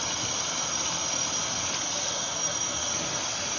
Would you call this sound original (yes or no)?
yes